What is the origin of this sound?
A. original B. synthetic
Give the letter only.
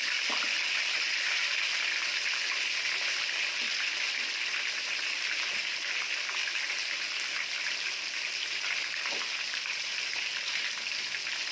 A